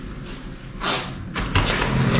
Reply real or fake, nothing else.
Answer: real